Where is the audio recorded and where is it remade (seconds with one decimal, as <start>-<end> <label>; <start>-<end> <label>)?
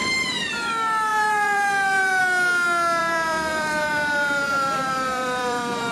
0.0-0.7 remade; 0.7-1.1 recorded; 1.1-2.2 remade; 2.2-3.0 recorded; 3.0-5.9 remade